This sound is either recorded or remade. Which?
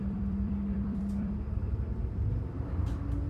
remade